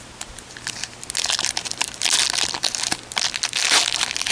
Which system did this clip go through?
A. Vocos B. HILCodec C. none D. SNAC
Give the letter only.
C